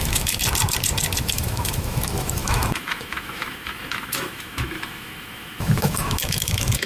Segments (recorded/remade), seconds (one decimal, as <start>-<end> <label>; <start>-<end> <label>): 0.0-0.4 remade; 0.4-1.2 recorded; 1.2-6.9 remade